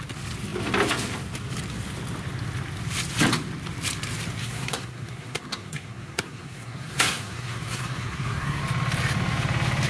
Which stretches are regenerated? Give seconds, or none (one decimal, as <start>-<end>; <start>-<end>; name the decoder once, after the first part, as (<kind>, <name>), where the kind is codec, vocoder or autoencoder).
4.4-8.6 (codec, SNAC)